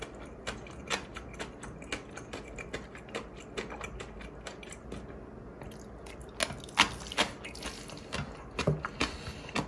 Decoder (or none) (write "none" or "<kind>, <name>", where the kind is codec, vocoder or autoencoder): none